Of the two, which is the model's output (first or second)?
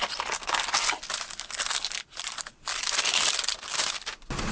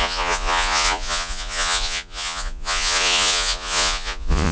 second